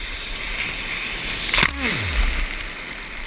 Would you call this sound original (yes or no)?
yes